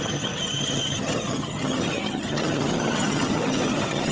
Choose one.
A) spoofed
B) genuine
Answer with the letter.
A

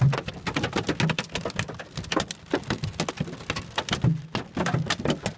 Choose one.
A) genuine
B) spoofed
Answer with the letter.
A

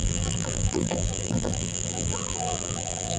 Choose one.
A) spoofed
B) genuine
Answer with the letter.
A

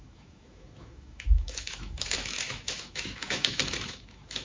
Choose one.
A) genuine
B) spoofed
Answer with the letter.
B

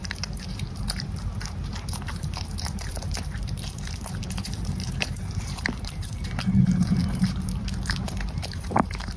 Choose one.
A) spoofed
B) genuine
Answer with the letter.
A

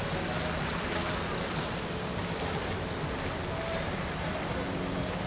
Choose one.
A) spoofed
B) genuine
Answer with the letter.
B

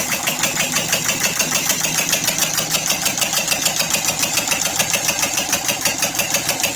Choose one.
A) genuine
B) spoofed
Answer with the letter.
A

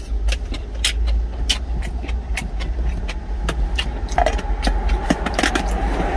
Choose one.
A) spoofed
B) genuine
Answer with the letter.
B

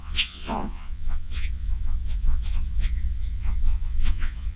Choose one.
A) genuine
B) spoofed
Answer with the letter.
B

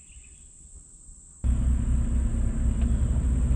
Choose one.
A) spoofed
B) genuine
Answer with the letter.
B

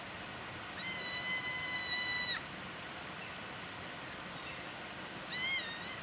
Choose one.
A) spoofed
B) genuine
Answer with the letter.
B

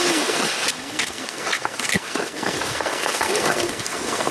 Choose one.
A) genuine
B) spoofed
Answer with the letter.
B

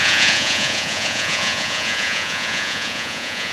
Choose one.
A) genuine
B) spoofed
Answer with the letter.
B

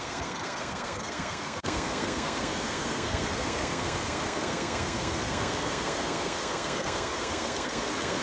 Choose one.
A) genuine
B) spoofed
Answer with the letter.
B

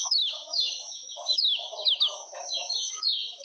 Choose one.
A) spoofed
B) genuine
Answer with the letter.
A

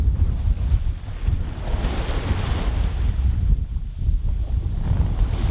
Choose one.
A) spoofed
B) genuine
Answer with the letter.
B